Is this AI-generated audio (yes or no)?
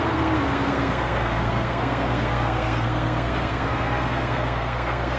yes